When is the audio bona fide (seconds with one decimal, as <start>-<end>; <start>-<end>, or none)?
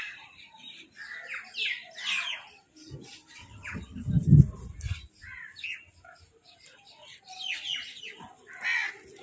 0.0-3.4; 4.4-9.2